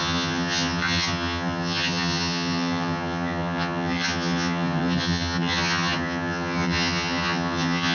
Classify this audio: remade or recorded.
remade